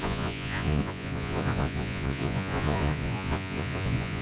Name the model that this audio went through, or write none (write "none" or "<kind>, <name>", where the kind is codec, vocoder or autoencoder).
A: vocoder, Vocos